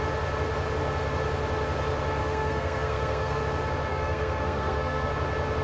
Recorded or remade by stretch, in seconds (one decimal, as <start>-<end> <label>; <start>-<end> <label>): 0.0-2.2 recorded; 2.2-3.4 remade; 3.4-3.9 recorded; 3.9-5.1 remade; 5.1-5.6 recorded

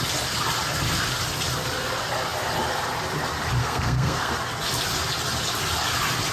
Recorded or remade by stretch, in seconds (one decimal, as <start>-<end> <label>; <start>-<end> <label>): 0.0-3.6 recorded; 3.6-4.3 remade; 4.3-6.3 recorded

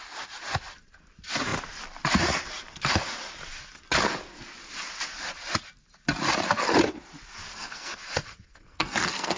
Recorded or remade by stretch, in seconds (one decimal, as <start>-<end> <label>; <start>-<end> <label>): 0.0-7.5 recorded; 7.5-9.4 remade

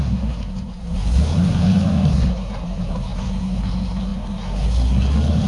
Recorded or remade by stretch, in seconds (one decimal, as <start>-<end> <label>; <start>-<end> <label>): 0.0-5.5 remade

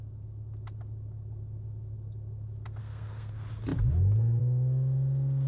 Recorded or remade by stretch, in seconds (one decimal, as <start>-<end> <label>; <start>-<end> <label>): 0.0-2.8 recorded; 2.8-3.3 remade; 3.3-5.5 recorded

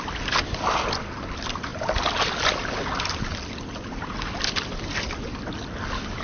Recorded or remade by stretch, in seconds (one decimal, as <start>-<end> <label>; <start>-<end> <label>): 0.0-6.2 recorded